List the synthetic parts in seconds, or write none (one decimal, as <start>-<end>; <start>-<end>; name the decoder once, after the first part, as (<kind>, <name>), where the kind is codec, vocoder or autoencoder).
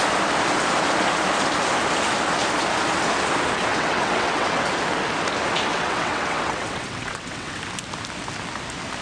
3.7-4.6 (vocoder, WaveNeXt); 5.7-7.6